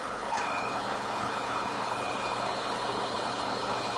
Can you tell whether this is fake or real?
fake